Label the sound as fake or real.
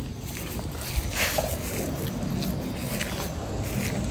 real